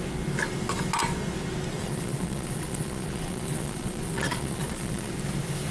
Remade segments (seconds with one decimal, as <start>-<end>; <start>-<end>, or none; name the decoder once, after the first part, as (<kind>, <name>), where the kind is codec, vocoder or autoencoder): 1.8-5.1 (vocoder, Vocos)